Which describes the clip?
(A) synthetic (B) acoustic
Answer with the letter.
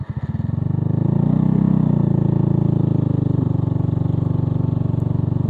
B